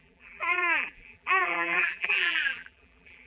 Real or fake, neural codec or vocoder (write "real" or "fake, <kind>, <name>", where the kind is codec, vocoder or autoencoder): fake, vocoder, BigVGAN v2